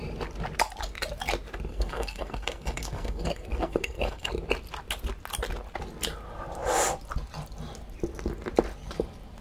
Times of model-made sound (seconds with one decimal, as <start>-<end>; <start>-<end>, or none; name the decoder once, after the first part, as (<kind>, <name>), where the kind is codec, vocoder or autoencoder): 1.7-4.3 (codec, SNAC)